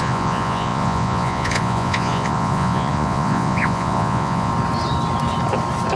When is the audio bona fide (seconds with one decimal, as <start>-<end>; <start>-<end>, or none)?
4.5-6.0